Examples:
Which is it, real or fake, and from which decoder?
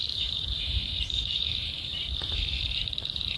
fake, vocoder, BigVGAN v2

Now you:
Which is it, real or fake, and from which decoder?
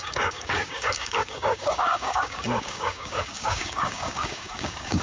fake, codec, DAC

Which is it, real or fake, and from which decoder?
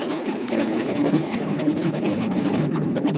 fake, codec, HILCodec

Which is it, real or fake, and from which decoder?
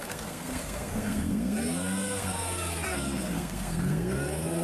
fake, codec, SNAC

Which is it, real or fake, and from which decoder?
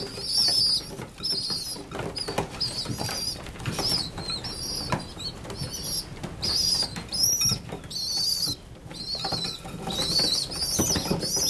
real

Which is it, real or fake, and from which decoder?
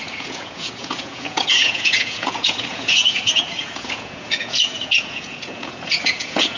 fake, vocoder, Vocos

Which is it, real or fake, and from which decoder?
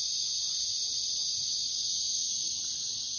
real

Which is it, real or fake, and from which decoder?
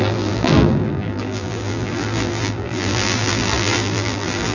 fake, vocoder, BigVGAN v2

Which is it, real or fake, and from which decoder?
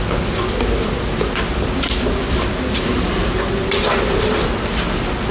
real